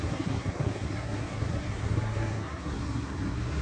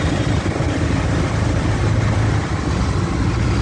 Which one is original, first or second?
second